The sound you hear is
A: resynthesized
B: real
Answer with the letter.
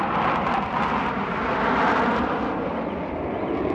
B